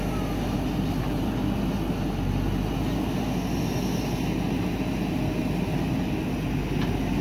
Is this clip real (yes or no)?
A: yes